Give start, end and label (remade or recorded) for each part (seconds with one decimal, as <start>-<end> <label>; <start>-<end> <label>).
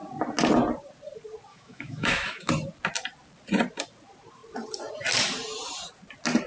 0.0-1.5 recorded; 1.5-2.5 remade; 2.5-6.5 recorded